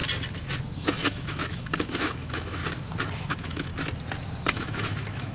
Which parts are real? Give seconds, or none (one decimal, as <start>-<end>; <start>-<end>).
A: 0.0-0.8; 2.6-3.3; 3.7-4.5

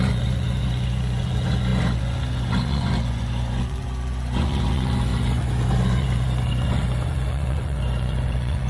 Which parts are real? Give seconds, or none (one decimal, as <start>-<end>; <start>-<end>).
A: none